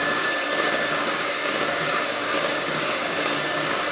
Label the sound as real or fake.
fake